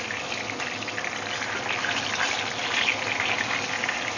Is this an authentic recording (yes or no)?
yes